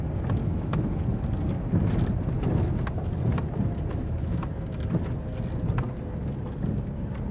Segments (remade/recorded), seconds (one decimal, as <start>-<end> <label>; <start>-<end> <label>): 0.0-0.4 recorded; 0.4-0.9 remade; 0.9-3.9 recorded; 3.9-4.4 remade; 4.4-7.3 recorded